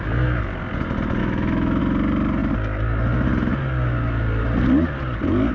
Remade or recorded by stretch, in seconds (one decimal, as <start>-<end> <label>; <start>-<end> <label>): 0.0-1.2 recorded; 1.2-1.8 remade; 1.8-5.5 recorded